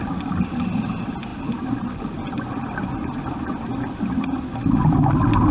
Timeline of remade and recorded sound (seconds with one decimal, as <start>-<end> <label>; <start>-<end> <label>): 0.0-5.5 recorded